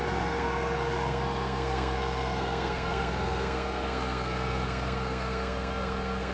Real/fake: fake